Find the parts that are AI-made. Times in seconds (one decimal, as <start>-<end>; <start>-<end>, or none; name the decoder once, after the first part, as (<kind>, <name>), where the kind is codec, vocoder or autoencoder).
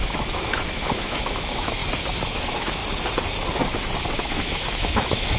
0.0-1.8 (autoencoder, DAC-VAE); 2.4-2.8; 4.1-5.4